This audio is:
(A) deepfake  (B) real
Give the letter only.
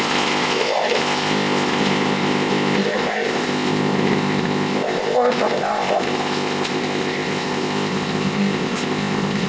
A